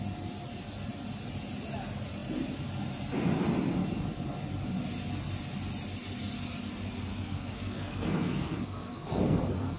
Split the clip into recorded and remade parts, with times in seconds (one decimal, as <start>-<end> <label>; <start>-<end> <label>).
0.0-7.1 recorded; 7.1-9.8 remade